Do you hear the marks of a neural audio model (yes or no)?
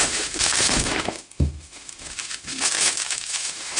yes